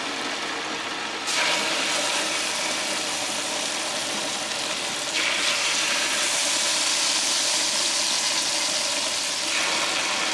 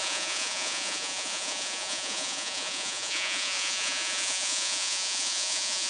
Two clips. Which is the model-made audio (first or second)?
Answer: second